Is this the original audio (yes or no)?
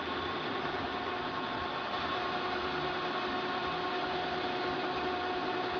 yes